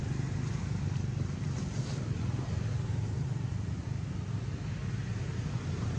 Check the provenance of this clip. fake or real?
real